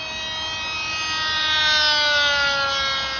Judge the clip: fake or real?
real